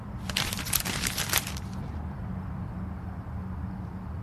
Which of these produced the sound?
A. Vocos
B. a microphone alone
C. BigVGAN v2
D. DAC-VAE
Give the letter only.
B